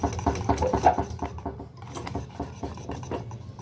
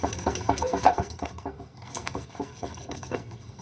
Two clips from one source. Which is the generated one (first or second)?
second